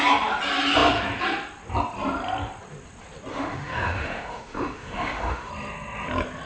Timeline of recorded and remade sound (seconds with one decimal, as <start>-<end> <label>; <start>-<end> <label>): 0.0-3.3 recorded; 3.3-5.5 remade; 5.5-6.5 recorded